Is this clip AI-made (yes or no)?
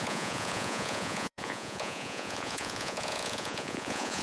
yes